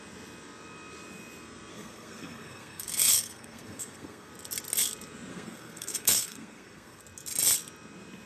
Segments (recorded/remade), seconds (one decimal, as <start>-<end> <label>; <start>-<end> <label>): 0.0-1.7 recorded; 1.7-4.3 remade; 4.3-5.3 recorded; 5.3-7.0 remade; 7.0-8.3 recorded